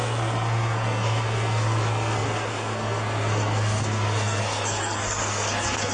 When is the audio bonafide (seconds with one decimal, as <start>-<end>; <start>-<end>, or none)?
none